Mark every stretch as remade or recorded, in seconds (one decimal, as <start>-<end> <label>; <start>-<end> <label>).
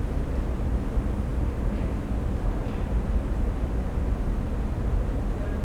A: 0.0-5.6 recorded